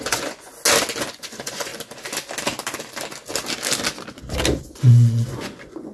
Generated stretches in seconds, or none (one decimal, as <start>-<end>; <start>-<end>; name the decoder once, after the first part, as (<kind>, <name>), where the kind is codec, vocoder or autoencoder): 0.0-0.5 (vocoder, Vocos); 1.1-1.7; 4.8-5.9